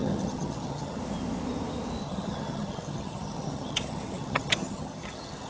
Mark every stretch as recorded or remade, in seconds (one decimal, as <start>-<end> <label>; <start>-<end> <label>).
0.0-1.0 remade; 1.0-2.0 recorded; 2.0-5.5 remade